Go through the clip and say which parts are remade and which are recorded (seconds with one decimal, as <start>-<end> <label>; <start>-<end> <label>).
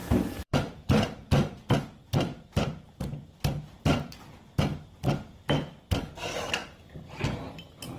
0.0-1.6 remade; 1.6-2.3 recorded; 2.3-3.6 remade; 3.6-6.6 recorded; 6.6-7.1 remade; 7.1-8.0 recorded